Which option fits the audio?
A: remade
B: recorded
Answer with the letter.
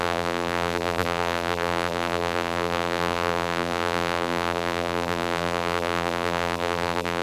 A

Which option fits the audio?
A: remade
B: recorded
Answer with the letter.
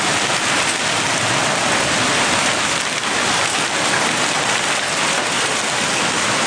B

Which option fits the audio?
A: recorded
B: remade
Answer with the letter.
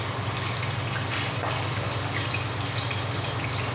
A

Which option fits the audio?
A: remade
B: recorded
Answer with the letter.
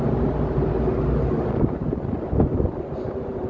B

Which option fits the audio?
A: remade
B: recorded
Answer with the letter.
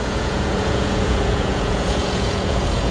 A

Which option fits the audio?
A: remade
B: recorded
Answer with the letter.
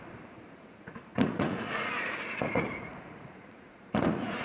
A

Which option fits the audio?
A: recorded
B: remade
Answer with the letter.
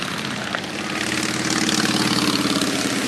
A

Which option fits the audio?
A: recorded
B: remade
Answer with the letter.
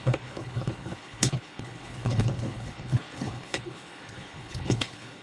B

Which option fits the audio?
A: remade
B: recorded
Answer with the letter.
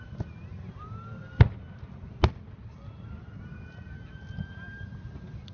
B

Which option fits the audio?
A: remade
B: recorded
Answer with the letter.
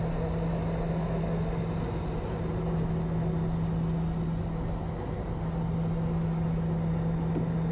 B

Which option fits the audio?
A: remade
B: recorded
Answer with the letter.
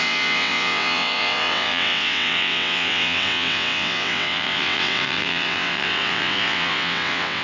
A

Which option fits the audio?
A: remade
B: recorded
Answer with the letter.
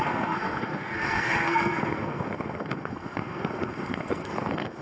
A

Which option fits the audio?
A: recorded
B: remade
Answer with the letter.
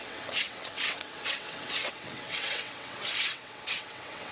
B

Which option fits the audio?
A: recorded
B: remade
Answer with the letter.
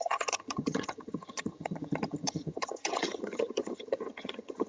B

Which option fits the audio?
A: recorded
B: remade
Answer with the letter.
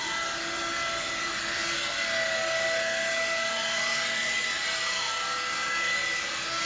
A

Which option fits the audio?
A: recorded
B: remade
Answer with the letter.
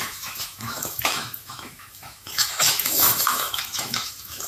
B